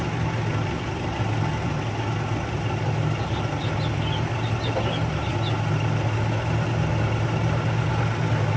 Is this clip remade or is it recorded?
recorded